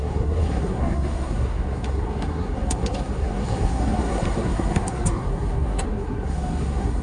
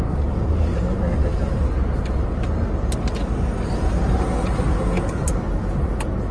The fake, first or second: first